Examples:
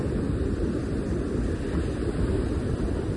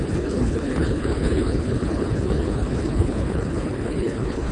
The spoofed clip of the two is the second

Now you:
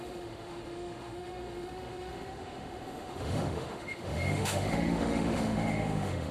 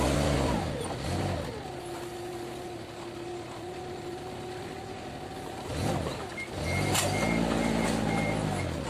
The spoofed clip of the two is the first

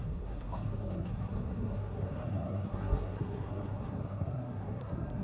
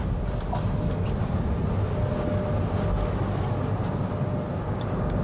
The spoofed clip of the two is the first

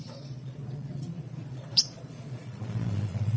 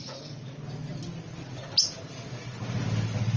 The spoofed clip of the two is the first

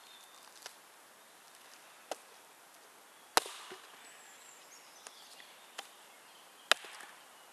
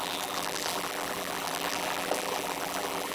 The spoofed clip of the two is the second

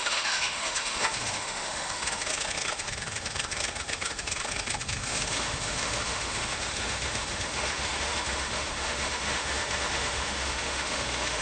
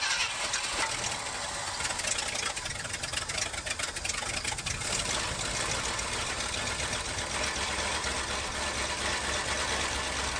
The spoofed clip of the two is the first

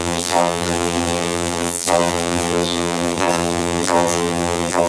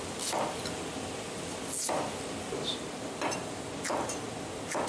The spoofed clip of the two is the first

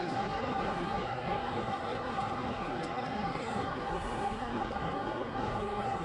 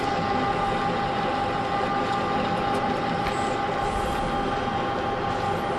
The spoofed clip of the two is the first